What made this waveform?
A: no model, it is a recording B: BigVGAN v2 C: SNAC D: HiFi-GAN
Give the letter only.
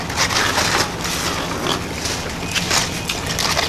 A